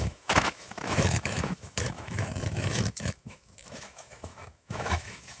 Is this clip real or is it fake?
fake